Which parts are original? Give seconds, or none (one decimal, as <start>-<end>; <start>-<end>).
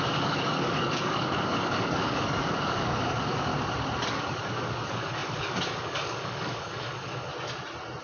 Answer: 3.5-4.1; 7.3-8.0